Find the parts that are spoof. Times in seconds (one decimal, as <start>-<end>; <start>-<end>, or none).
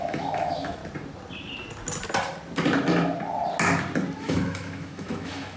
0.0-0.8; 4.2-5.6